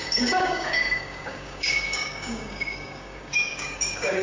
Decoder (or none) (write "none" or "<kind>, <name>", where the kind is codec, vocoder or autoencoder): codec, DAC